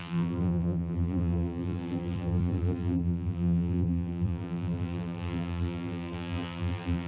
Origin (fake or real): fake